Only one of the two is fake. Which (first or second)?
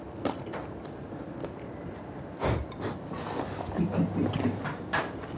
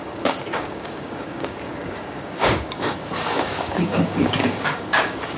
second